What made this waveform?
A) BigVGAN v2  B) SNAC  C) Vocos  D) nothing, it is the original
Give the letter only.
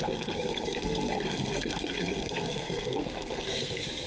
B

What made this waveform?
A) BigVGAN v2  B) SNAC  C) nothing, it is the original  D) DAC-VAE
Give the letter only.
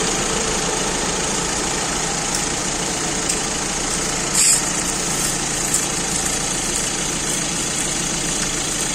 A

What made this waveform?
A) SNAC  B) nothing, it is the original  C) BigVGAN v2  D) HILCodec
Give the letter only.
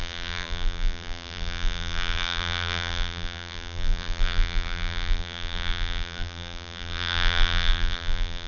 C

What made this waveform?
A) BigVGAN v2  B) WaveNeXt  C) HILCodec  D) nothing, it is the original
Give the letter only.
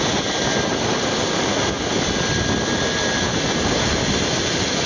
D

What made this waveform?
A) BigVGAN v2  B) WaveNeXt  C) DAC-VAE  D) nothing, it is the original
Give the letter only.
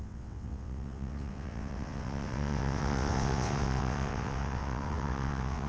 B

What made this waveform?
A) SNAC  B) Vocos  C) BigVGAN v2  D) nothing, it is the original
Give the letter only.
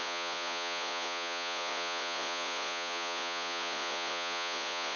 B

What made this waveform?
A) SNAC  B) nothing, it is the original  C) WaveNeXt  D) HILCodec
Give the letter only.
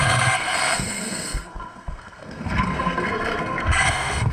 A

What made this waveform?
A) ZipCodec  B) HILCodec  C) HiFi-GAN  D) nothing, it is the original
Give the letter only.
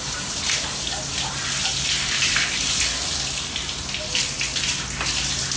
D